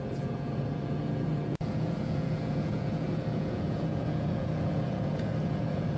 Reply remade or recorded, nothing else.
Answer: remade